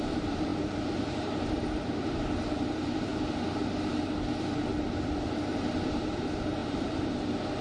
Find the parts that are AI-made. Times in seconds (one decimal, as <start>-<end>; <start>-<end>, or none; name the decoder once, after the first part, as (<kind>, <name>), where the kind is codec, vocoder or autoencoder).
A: 0.0-3.1 (vocoder, BigVGAN v2); 4.3-7.6

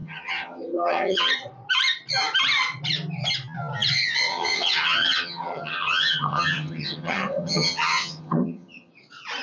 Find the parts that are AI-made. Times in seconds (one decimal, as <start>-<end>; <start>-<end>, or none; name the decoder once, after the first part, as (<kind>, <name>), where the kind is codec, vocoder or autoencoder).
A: 0.0-1.3 (vocoder, HiFi-GAN); 4.3-8.9

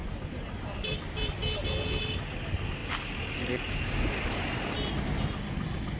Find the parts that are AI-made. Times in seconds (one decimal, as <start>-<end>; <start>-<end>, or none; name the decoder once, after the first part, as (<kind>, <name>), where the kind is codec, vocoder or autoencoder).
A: none

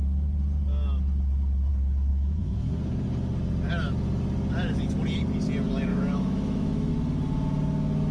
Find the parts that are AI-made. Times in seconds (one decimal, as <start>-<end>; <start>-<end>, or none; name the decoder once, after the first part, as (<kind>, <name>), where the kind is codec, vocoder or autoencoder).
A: 2.1-2.7 (autoencoder, DAC-VAE); 5.9-6.9

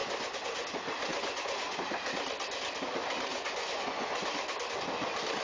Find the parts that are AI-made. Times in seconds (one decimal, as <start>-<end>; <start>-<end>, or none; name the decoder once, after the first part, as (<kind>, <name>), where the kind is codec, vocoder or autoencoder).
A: 0.0-0.6 (vocoder, Vocos); 1.1-1.9; 3.3-4.3

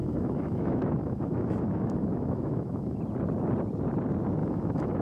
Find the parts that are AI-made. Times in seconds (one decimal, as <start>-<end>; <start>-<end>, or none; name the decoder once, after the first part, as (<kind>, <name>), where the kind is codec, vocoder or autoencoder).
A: 0.0-3.0 (autoencoder, DAC-VAE); 4.4-5.0

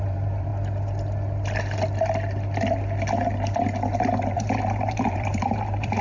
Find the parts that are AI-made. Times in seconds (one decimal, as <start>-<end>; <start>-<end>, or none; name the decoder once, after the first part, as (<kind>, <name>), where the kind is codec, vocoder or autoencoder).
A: 0.0-0.5 (vocoder, BigVGAN v2); 4.0-6.0

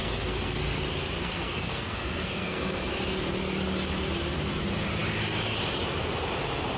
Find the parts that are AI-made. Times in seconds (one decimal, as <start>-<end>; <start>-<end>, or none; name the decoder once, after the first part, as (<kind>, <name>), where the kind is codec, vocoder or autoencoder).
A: 0.0-0.6 (codec, SNAC); 1.2-2.9